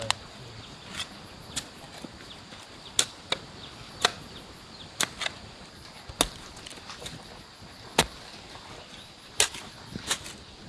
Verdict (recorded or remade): recorded